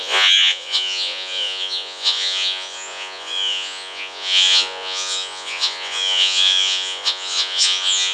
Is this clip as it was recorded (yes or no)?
no